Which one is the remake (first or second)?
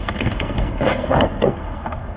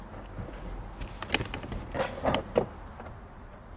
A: first